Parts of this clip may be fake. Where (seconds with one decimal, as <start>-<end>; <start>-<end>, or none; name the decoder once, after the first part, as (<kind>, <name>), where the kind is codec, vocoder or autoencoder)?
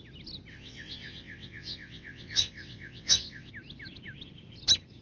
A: 0.5-3.5 (vocoder, WaveNeXt)